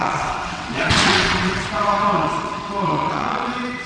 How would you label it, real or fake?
fake